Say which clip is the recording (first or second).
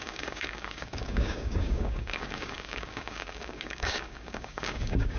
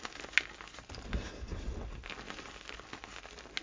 second